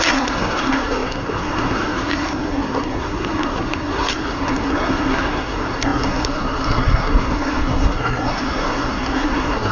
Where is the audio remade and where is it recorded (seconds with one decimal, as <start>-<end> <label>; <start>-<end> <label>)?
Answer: 0.0-9.7 remade